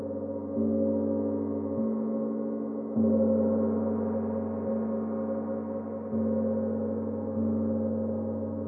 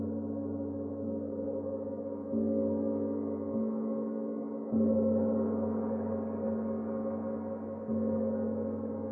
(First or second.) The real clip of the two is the first